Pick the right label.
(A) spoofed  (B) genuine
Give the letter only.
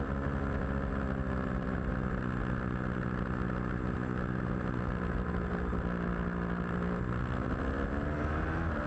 B